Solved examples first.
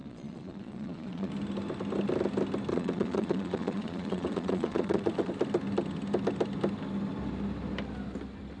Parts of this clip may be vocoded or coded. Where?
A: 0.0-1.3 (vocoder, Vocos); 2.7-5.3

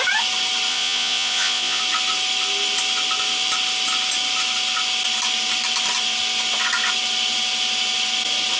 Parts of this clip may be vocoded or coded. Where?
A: 0.7-1.8 (vocoder, Vocos)

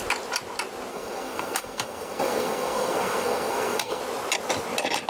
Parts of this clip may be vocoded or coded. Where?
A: 0.9-4.0 (codec, SNAC)

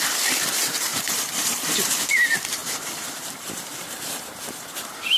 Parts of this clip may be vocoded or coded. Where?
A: 0.0-5.2 (vocoder, BigVGAN v2)

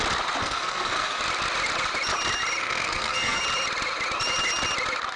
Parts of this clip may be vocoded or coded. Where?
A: 0.4-1.2 (codec, SNAC); 2.6-3.4

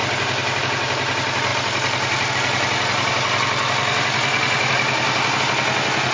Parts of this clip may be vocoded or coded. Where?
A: none

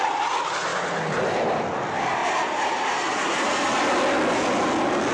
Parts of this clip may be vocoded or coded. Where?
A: none